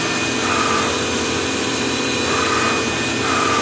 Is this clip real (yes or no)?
yes